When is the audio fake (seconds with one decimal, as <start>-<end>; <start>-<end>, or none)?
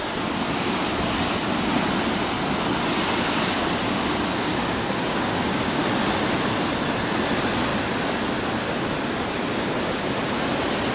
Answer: 4.5-5.8